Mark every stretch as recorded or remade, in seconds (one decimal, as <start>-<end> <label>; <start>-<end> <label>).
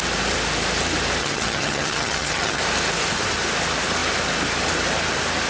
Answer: 0.0-1.2 recorded; 1.2-2.6 remade; 2.6-5.5 recorded